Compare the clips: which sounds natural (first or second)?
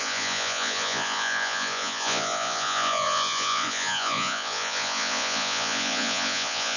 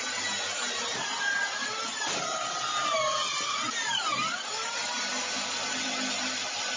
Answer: second